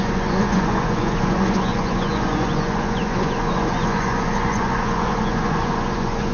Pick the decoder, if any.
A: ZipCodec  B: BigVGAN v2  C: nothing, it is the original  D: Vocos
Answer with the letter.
D